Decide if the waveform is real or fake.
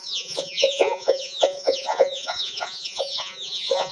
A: fake